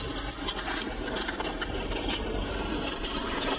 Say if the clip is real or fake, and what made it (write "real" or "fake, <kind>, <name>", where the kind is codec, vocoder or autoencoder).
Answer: real